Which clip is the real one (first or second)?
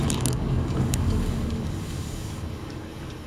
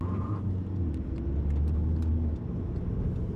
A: second